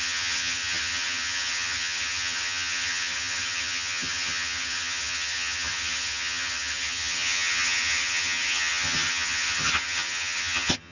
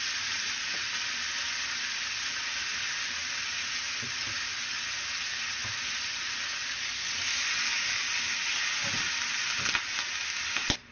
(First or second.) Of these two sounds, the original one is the second